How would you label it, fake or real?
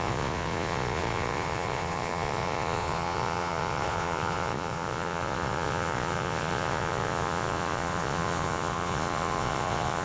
fake